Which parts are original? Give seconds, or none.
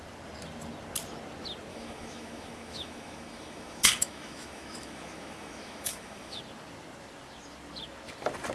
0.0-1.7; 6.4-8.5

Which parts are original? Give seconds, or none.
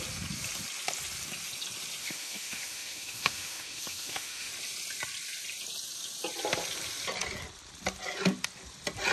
0.0-2.0; 4.5-9.1